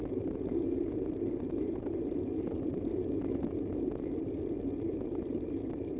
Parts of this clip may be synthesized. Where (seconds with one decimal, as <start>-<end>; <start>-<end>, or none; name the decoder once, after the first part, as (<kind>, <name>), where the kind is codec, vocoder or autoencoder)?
none